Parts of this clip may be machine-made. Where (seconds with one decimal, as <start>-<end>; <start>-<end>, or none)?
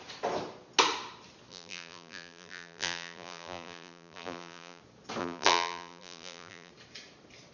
1.5-4.8; 5.2-6.7